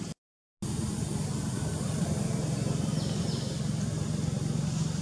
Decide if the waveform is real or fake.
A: real